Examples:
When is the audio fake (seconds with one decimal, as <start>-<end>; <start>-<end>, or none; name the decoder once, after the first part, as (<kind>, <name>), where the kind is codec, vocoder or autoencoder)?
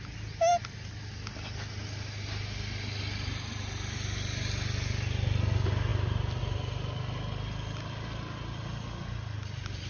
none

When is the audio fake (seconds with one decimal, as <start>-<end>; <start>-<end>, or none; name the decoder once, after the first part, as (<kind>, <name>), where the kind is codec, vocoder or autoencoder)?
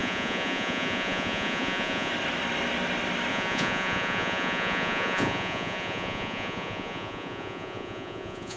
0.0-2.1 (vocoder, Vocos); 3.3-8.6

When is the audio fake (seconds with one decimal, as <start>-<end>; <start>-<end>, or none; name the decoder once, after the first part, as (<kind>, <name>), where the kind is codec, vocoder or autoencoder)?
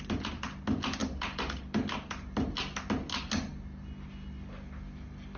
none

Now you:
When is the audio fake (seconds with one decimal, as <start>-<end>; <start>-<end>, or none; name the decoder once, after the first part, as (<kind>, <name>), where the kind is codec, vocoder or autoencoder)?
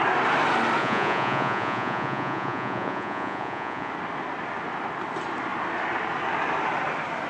0.8-3.9 (vocoder, Vocos)